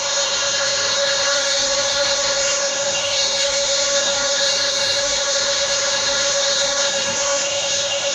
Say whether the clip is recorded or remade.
remade